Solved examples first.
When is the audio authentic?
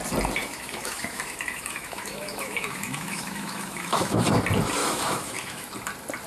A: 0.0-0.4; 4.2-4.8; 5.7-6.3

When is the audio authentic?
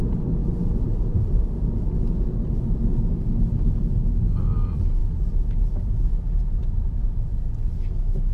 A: 0.0-8.3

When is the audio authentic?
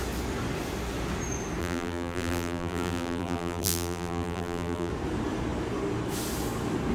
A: 0.0-1.6; 4.9-6.9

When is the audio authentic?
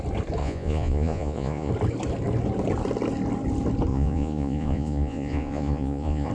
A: 0.0-0.4; 1.7-3.9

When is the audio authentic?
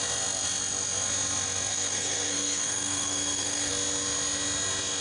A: 0.0-1.7; 3.7-5.0